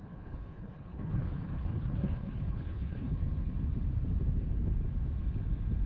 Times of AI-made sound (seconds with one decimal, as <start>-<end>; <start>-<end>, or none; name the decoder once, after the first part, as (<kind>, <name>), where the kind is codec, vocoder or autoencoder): 0.0-3.5 (codec, HILCodec)